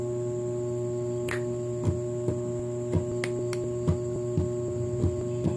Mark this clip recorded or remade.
recorded